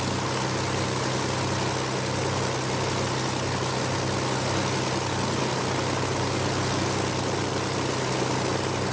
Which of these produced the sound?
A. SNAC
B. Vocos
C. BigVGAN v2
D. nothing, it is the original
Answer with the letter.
D